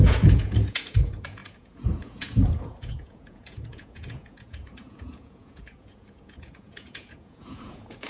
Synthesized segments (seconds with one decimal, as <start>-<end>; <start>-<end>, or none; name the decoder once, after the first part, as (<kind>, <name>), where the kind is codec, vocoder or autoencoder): 0.0-8.1 (vocoder, Vocos)